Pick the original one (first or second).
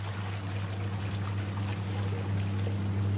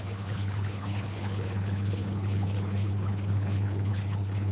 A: first